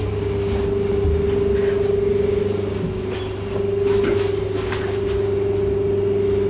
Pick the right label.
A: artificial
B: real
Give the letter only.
B